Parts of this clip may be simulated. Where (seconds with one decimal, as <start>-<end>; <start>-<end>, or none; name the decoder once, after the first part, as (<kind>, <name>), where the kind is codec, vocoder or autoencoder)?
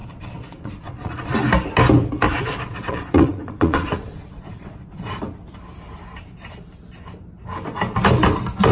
0.0-1.3 (vocoder, Vocos); 2.3-5.2